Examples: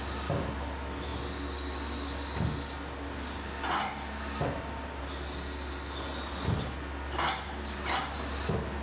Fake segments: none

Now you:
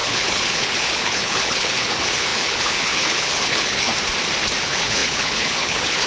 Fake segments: 0.0-3.9 (codec, HILCodec); 4.6-6.1

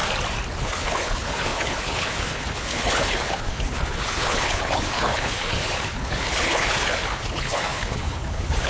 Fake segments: 0.6-8.7 (codec, HILCodec)

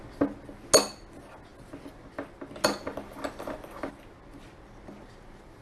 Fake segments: none

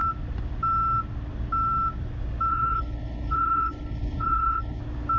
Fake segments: 2.5-4.8 (codec, HILCodec)

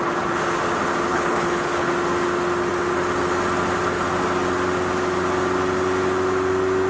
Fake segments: 1.1-1.9 (codec, HILCodec)

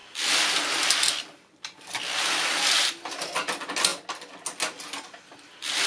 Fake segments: none

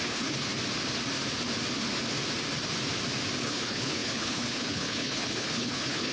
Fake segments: 0.0-0.5 (codec, HILCodec); 3.4-6.1